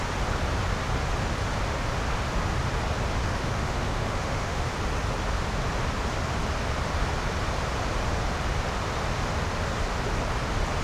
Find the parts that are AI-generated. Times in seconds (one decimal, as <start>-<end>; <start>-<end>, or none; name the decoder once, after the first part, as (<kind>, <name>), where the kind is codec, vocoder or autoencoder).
3.2-4.6 (autoencoder, DAC-VAE)